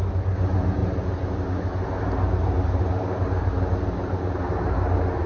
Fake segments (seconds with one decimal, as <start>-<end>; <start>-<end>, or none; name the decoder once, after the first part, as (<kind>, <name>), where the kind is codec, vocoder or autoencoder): none